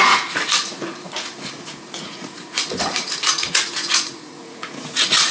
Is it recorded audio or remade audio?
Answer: remade